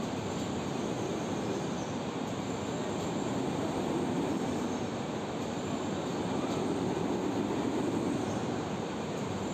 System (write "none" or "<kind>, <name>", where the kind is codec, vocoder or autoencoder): none